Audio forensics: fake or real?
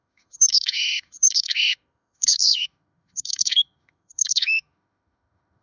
fake